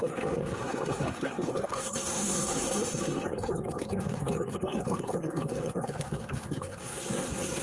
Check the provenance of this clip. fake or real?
fake